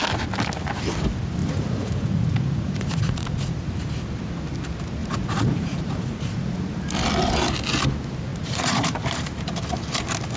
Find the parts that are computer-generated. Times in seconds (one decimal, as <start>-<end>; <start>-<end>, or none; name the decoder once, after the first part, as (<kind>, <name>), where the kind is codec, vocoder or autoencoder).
1.4-3.7 (vocoder, Vocos); 5.0-6.8; 8.3-9.0